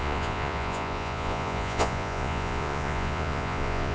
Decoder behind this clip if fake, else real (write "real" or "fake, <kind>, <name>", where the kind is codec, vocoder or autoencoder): fake, vocoder, Vocos